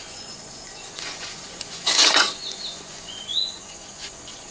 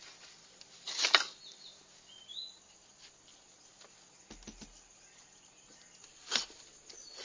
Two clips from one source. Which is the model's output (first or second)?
first